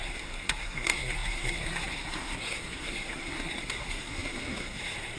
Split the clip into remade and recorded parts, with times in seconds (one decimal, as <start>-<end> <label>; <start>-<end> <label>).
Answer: 0.0-5.2 remade

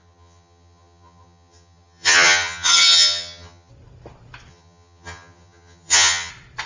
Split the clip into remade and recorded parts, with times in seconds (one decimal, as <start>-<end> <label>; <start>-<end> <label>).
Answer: 0.0-3.7 remade; 3.7-4.5 recorded; 4.5-6.3 remade; 6.3-6.7 recorded

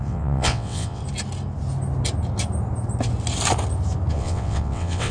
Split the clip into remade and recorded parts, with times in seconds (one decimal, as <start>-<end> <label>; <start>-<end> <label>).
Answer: 0.0-1.0 remade; 1.0-4.1 recorded; 4.1-5.1 remade

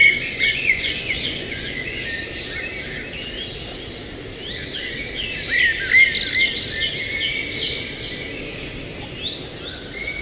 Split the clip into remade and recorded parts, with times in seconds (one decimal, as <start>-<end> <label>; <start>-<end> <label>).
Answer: 0.0-2.0 remade; 2.0-10.2 recorded

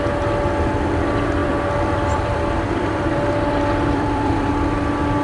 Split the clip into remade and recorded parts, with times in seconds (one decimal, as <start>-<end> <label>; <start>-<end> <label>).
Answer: 0.0-1.4 recorded; 1.4-4.5 remade; 4.5-5.2 recorded

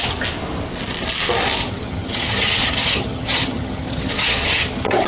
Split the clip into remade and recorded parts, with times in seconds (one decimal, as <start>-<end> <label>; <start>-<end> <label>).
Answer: 0.0-1.6 recorded; 1.6-5.1 remade